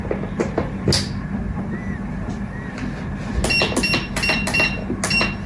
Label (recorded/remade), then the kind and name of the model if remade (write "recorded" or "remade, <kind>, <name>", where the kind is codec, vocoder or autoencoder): recorded